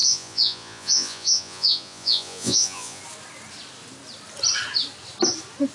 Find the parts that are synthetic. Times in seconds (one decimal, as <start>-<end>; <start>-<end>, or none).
0.0-3.0